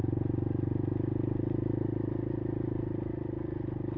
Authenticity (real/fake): real